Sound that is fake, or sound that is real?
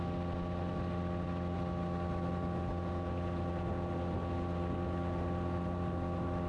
real